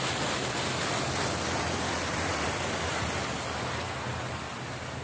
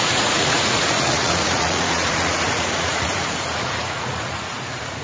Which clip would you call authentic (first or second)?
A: first